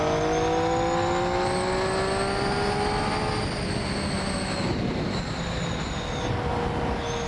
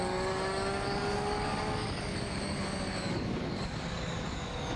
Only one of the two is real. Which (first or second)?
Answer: first